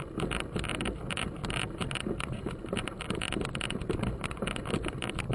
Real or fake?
real